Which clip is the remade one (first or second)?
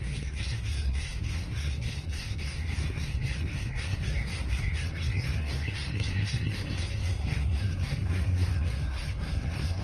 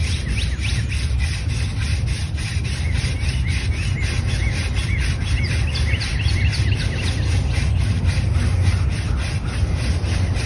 first